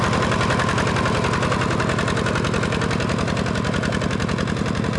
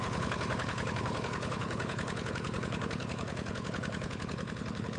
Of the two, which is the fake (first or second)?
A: second